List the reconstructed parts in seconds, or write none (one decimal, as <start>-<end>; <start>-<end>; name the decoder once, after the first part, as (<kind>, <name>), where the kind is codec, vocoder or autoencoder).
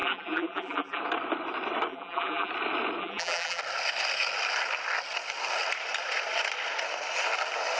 0.0-1.0 (vocoder, BigVGAN v2); 1.9-2.5; 3.0-3.6